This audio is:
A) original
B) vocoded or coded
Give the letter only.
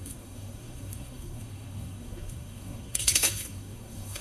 B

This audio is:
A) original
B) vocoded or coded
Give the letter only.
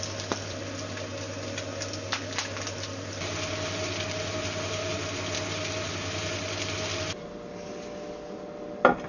A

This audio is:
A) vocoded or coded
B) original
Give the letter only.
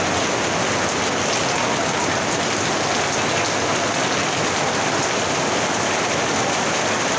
B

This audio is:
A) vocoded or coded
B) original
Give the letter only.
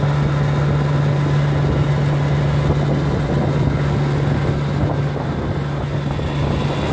B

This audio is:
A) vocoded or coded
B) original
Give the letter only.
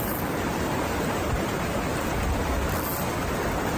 B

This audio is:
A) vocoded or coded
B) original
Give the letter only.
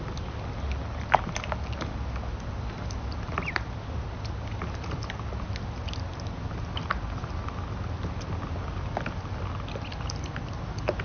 B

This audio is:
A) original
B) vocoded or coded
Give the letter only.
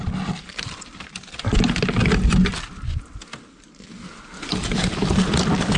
A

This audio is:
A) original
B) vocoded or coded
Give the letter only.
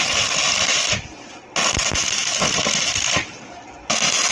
A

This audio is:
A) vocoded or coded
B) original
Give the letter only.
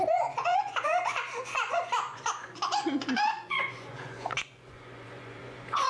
A